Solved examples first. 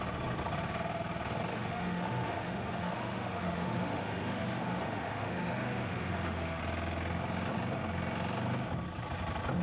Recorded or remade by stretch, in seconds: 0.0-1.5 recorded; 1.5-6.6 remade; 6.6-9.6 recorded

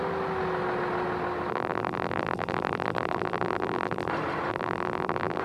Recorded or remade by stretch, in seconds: 0.0-1.5 recorded; 1.5-4.1 remade; 4.1-4.5 recorded; 4.5-5.4 remade

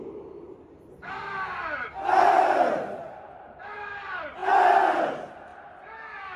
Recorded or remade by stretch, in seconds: 0.0-5.5 remade; 5.5-6.4 recorded

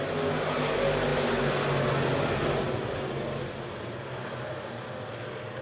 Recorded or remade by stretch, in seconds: 0.0-5.6 recorded

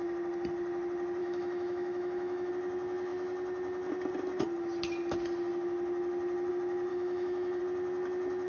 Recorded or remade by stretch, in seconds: 0.0-1.2 recorded; 1.2-2.5 remade; 2.5-6.9 recorded; 6.9-7.6 remade; 7.6-8.5 recorded

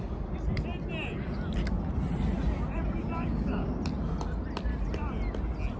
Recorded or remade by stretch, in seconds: 0.0-3.0 recorded; 3.0-3.7 remade; 3.7-5.8 recorded

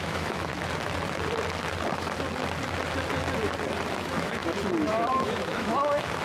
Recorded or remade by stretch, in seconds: 0.0-0.5 remade; 0.5-4.0 recorded; 4.0-4.4 remade; 4.4-4.9 recorded; 4.9-6.2 remade